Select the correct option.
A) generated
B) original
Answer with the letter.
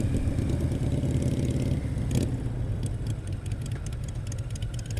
B